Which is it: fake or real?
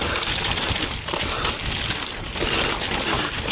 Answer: real